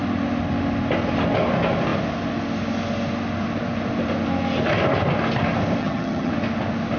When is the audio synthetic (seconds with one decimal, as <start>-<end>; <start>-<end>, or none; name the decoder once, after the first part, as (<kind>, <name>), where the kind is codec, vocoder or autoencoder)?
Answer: 5.8-6.3 (vocoder, HiFi-GAN)